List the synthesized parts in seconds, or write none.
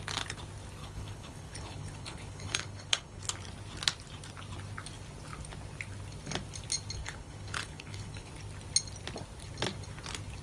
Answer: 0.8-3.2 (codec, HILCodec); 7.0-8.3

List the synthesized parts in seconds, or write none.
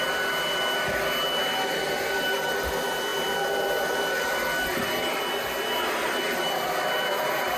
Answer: none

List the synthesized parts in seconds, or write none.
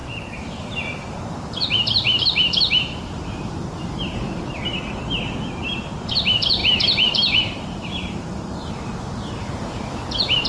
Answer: 0.0-4.6 (vocoder, BigVGAN v2); 6.1-10.5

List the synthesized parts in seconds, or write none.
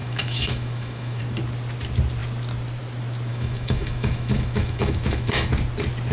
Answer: 0.0-1.2 (autoencoder, DAC-VAE); 3.3-5.5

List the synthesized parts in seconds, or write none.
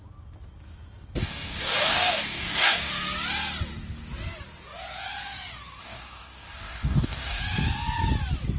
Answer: 1.2-2.9 (codec, DAC); 5.8-7.4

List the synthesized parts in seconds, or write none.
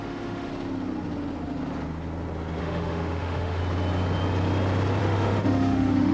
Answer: 0.0-0.5 (autoencoder, DAC-VAE); 2.6-3.6; 5.0-6.1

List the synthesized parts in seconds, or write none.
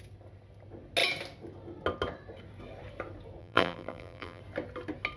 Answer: 3.4-4.4 (vocoder, BigVGAN v2)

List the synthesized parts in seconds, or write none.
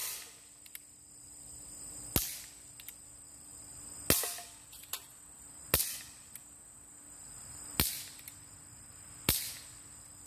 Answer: none